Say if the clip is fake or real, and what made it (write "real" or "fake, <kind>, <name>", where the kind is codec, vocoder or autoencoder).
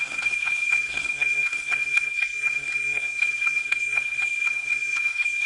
fake, codec, SNAC